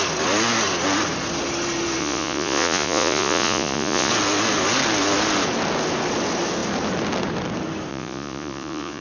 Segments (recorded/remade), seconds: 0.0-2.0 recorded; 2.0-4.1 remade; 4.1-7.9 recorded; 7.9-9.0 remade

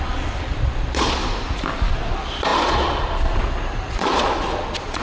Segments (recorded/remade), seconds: 0.0-1.2 remade; 1.2-1.9 recorded; 1.9-5.0 remade

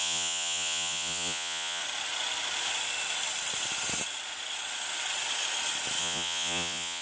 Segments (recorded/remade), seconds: 0.0-1.8 remade; 1.8-6.0 recorded; 6.0-7.0 remade